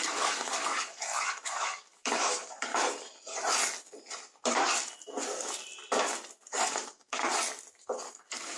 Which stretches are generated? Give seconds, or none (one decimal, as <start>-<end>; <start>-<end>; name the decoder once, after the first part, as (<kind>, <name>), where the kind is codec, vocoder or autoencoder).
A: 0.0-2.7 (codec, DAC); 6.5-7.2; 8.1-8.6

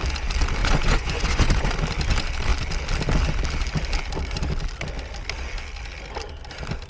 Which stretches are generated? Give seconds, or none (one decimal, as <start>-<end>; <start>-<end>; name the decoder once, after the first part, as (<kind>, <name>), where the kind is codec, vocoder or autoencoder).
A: 0.6-1.7 (vocoder, Vocos)

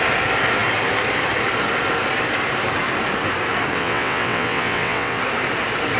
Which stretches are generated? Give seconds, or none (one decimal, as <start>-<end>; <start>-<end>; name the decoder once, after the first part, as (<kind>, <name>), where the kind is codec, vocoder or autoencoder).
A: 3.7-5.2 (vocoder, WaveNeXt)

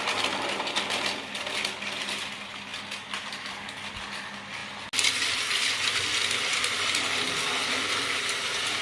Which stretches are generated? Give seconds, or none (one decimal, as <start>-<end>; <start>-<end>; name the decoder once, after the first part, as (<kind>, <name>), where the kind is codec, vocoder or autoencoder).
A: none

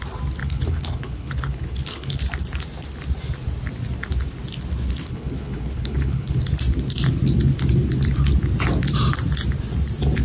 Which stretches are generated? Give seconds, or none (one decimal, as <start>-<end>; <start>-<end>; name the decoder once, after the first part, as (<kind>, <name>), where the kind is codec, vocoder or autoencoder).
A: 0.4-2.2 (codec, HILCodec); 4.9-6.4

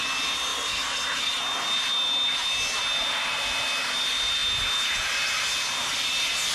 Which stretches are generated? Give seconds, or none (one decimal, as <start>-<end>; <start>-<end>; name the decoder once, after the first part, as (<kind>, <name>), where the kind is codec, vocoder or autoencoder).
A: none

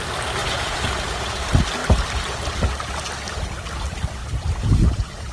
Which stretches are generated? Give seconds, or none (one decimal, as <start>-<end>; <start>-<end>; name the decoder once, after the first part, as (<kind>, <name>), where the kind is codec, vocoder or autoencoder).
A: 0.4-1.4 (vocoder, Vocos); 4.2-5.3